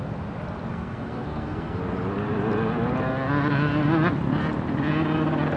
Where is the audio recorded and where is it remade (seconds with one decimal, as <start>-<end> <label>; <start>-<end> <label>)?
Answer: 0.0-0.7 recorded; 0.7-1.8 remade; 1.8-5.6 recorded